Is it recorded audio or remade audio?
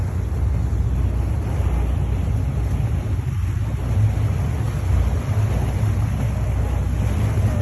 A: recorded